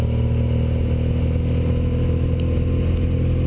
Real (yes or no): yes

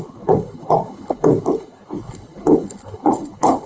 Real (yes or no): no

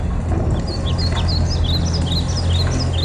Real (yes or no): yes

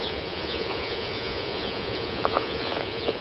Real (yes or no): no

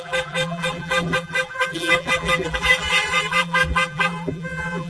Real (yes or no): no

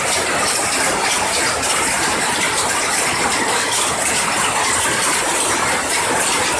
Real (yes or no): yes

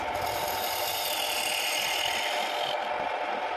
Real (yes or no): yes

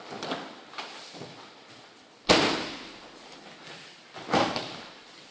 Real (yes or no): yes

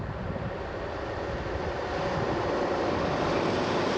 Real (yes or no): yes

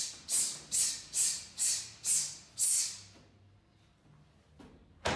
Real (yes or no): yes